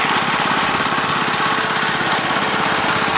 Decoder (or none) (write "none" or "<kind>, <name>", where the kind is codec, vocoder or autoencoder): none